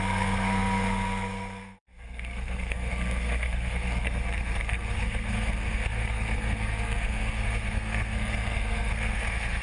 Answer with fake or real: fake